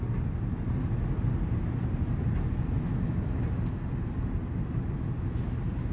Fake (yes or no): no